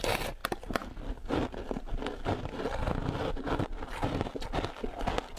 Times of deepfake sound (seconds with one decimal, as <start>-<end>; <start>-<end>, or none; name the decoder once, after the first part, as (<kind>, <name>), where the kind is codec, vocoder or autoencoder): none